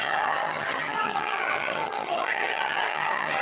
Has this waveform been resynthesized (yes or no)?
yes